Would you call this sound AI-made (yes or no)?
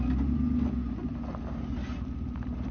no